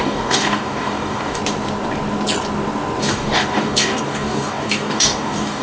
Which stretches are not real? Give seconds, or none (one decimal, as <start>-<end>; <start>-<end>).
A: 0.0-1.4; 3.0-5.6